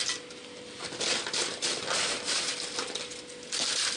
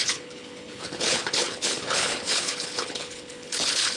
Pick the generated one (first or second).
second